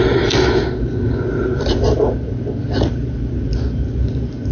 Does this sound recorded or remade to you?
recorded